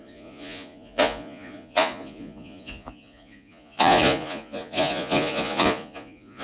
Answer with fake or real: fake